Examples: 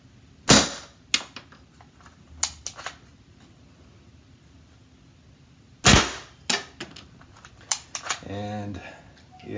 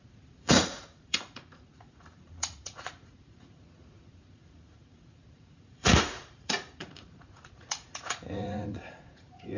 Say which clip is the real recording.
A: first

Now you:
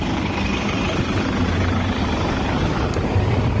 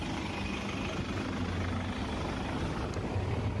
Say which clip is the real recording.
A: second